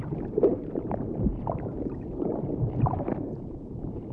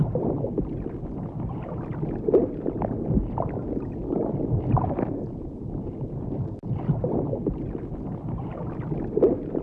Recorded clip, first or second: second